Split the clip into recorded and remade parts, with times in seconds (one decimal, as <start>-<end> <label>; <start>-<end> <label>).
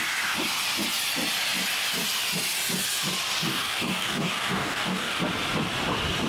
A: 0.0-3.5 recorded; 3.5-5.2 remade; 5.2-6.3 recorded